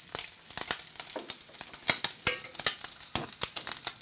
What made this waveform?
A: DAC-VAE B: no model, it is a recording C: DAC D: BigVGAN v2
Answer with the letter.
B